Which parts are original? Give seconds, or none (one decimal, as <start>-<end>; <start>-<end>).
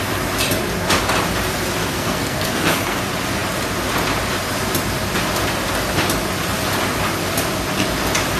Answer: 0.0-1.8; 3.0-8.4